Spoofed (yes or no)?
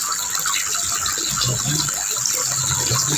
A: no